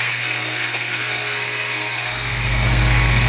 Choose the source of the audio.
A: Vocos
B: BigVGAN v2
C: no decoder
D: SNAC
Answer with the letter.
D